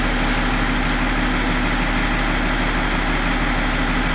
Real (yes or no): yes